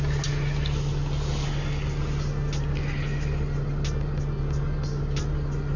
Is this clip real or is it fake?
real